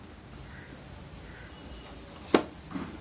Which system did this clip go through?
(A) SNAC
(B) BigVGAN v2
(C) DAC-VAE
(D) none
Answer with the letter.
D